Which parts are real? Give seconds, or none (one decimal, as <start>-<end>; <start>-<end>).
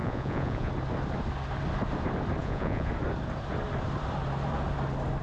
0.7-2.4; 2.9-5.2